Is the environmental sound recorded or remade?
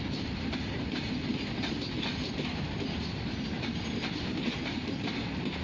recorded